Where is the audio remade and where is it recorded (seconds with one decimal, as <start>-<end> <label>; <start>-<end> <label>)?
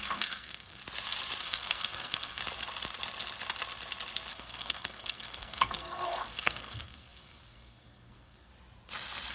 0.0-0.8 remade; 0.8-1.4 recorded; 1.4-2.4 remade; 2.4-4.3 recorded; 4.3-8.5 remade; 8.5-9.3 recorded